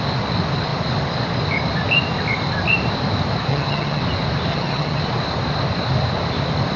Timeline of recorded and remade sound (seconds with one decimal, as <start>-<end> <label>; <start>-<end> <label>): 0.0-3.5 recorded; 3.5-4.0 remade; 4.0-4.5 recorded; 4.5-5.0 remade; 5.0-6.8 recorded